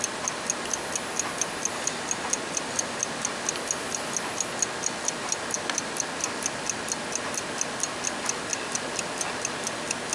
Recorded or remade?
recorded